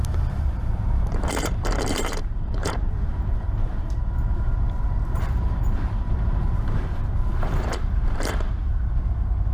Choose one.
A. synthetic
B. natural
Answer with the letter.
A